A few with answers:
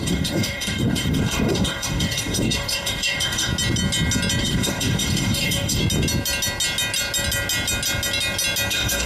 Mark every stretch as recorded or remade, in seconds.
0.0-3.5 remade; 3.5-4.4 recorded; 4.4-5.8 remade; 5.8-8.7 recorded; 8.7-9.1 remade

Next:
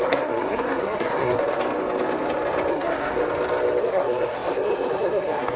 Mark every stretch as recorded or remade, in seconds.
0.0-1.4 remade; 1.4-2.7 recorded; 2.7-3.2 remade; 3.2-3.8 recorded; 3.8-5.6 remade

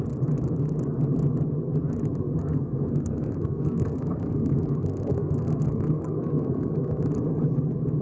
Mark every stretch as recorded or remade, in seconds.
0.0-2.3 recorded; 2.3-7.1 remade; 7.1-8.0 recorded

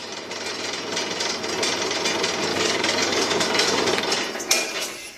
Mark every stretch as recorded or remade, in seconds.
0.0-2.5 recorded; 2.5-3.9 remade; 3.9-5.2 recorded

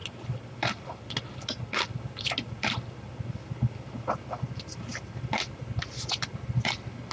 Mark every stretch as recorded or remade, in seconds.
0.0-7.1 recorded

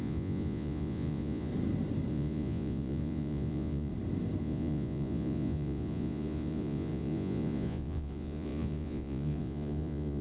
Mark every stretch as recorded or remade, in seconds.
0.0-1.5 remade; 1.5-2.1 recorded; 2.1-3.9 remade; 3.9-4.4 recorded; 4.4-10.2 remade

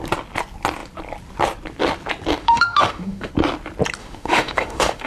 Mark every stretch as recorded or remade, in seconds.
0.0-2.4 recorded; 2.4-3.3 remade; 3.3-4.0 recorded; 4.0-5.1 remade

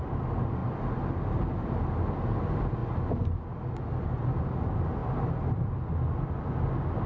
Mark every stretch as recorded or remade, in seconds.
0.0-7.1 recorded